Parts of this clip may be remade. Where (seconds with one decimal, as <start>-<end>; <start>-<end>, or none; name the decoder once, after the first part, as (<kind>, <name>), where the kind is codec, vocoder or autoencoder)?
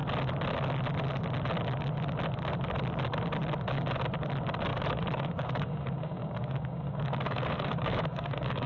4.7-8.7 (codec, DAC)